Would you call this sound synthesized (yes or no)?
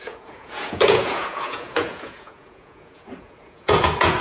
yes